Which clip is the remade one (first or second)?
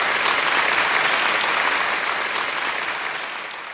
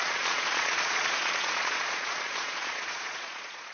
second